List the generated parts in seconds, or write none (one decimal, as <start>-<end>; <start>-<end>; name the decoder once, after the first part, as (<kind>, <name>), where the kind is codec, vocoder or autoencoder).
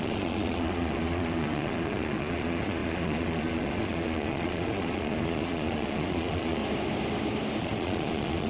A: 0.0-6.6 (vocoder, Vocos); 7.6-8.5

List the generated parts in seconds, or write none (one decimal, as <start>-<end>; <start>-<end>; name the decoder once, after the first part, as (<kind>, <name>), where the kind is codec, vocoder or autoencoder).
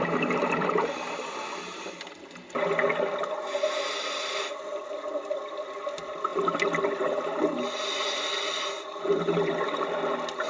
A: none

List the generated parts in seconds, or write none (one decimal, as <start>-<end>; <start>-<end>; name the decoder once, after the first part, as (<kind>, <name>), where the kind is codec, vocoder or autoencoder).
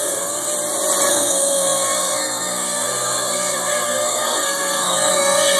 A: 0.0-0.5 (codec, SNAC); 1.1-5.6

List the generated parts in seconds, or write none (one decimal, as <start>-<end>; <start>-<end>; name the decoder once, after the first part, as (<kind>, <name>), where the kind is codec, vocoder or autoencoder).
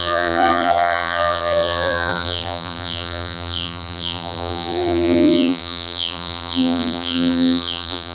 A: 0.0-8.1 (vocoder, BigVGAN v2)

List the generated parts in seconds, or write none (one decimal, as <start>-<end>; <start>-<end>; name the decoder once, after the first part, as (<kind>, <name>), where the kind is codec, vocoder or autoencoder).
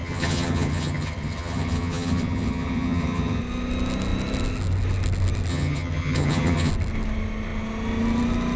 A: 0.0-3.4 (vocoder, HiFi-GAN); 5.5-6.7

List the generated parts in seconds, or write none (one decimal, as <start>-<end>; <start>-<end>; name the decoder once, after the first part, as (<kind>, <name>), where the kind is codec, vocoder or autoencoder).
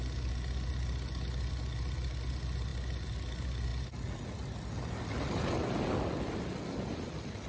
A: none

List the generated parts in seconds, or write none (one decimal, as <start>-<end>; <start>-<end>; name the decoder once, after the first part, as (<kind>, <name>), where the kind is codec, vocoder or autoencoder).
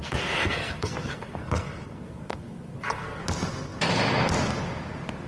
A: 0.0-3.2 (codec, SNAC)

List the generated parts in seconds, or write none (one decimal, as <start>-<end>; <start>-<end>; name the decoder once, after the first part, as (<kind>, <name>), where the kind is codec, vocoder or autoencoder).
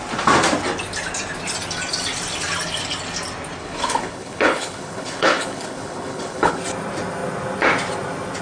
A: 3.6-6.6 (codec, HILCodec)